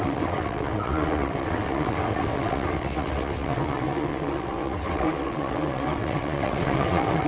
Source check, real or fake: fake